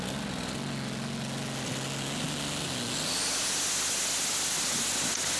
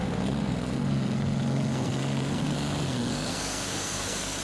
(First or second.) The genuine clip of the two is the first